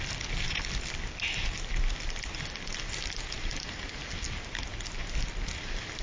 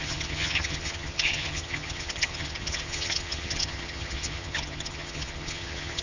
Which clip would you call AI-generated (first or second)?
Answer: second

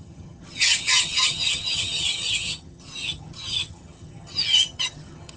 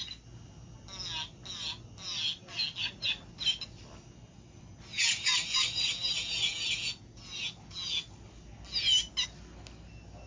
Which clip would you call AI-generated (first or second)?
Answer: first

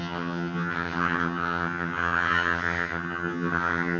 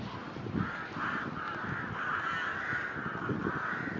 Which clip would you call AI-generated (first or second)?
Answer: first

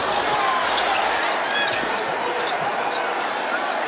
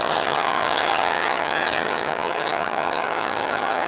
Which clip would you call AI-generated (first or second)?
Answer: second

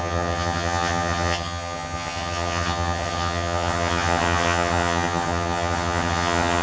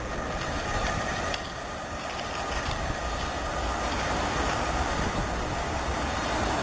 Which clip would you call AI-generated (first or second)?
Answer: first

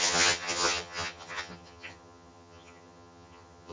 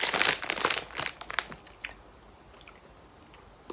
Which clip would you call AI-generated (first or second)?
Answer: first